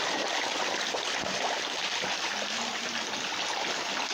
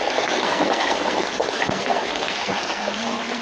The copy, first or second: second